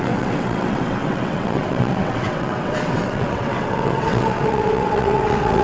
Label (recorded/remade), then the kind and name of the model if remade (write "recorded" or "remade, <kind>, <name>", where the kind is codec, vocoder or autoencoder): remade, vocoder, WaveNeXt